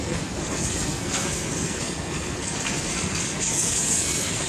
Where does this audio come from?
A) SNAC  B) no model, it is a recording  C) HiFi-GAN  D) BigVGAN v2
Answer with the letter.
A